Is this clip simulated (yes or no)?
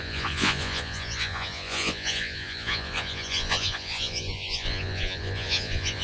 yes